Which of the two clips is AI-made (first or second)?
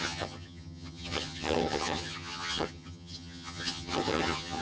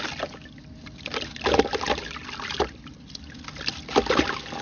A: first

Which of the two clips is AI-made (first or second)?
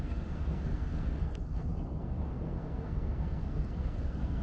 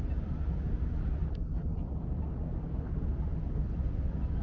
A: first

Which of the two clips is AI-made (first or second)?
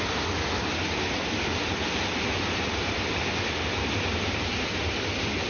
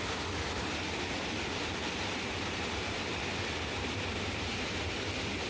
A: second